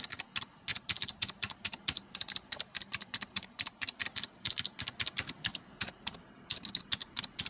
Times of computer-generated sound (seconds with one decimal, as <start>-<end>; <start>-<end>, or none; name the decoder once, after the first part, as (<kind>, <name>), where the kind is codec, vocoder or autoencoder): 0.7-4.5 (vocoder, BigVGAN v2); 5.5-6.3